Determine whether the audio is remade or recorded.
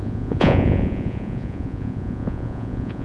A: remade